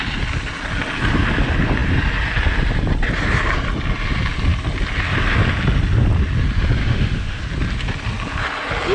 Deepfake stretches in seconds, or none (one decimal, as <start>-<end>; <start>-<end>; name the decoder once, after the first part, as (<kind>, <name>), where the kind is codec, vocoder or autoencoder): 6.8-7.4 (autoencoder, DAC-VAE)